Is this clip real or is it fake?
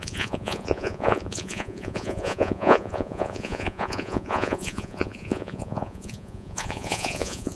fake